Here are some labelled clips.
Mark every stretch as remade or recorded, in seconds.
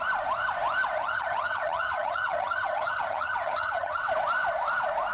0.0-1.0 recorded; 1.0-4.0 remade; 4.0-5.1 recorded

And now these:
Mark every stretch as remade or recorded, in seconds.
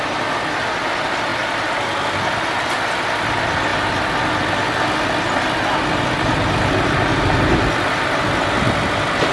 0.0-9.3 recorded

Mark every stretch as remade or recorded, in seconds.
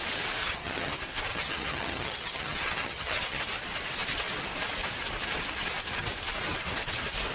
0.0-0.4 recorded; 0.4-0.9 remade; 0.9-1.3 recorded; 1.3-3.4 remade; 3.4-7.3 recorded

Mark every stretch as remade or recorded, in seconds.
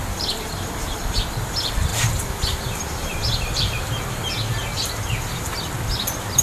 0.0-1.3 remade; 1.3-1.9 recorded; 1.9-4.0 remade; 4.0-6.4 recorded